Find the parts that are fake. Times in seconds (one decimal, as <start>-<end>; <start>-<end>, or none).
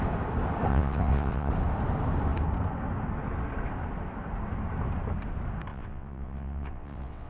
0.7-1.5; 5.7-7.3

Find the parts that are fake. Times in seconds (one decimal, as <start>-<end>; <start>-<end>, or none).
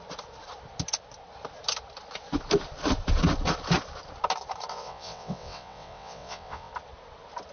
4.7-6.7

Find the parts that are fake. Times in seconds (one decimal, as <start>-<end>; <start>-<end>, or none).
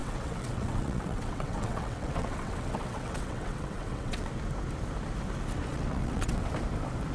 0.0-4.3; 5.7-6.5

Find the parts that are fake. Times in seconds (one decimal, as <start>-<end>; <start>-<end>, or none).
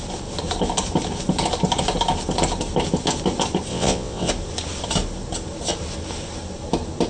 3.7-4.3